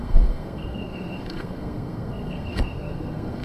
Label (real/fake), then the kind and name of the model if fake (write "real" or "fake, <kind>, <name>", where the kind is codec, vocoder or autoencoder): fake, codec, SNAC